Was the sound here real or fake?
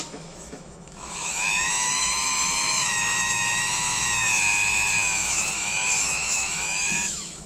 fake